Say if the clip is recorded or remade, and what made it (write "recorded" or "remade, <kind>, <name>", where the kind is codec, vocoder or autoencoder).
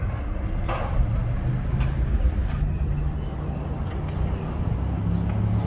recorded